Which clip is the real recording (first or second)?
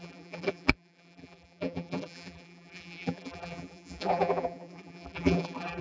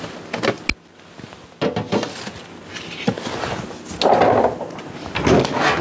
second